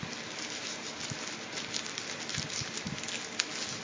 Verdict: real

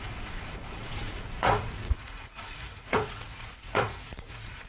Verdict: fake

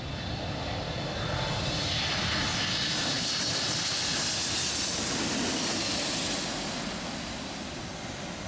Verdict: real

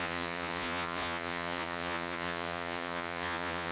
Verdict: fake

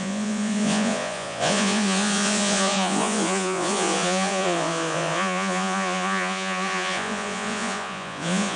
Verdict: fake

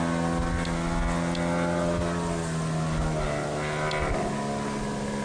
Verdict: real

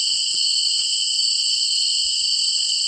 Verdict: real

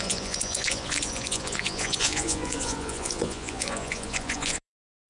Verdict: fake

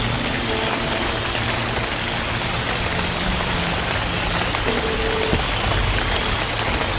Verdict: real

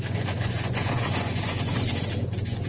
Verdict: fake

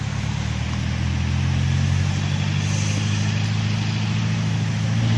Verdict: real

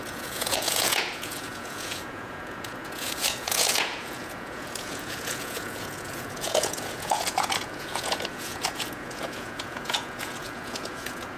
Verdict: fake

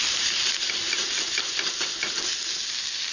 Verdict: real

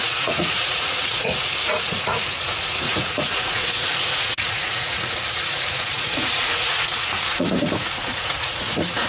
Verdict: fake